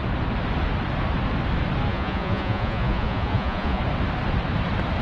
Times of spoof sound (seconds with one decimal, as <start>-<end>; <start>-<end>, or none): 1.9-3.8